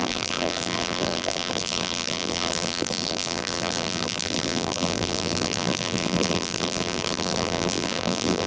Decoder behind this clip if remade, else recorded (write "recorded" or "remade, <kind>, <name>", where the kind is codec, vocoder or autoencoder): remade, vocoder, BigVGAN v2